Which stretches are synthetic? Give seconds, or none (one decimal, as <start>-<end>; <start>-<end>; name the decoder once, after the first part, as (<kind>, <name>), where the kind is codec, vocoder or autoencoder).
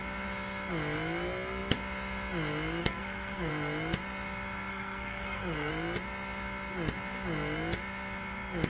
2.8-3.5 (codec, SNAC); 4.7-5.7